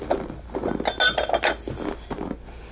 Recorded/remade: recorded